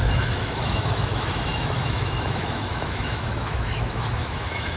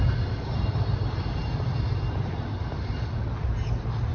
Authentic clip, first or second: second